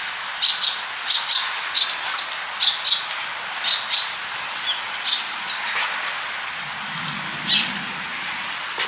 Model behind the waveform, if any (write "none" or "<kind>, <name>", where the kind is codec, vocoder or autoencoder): none